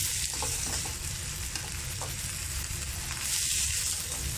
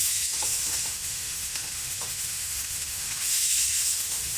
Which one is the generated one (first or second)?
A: second